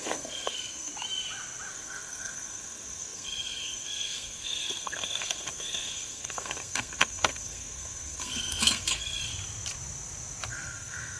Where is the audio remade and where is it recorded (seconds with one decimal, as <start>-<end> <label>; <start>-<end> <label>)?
0.0-0.9 remade; 0.9-1.7 recorded; 1.7-9.3 remade; 9.3-10.5 recorded; 10.5-11.2 remade